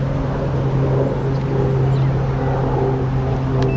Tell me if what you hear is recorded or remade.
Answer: recorded